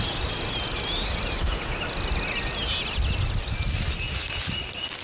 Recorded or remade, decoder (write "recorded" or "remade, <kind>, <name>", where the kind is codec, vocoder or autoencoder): recorded